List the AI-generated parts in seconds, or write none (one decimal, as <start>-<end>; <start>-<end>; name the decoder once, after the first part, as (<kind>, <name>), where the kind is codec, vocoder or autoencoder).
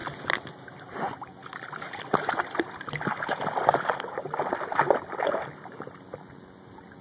none